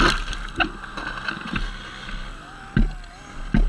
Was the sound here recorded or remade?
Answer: recorded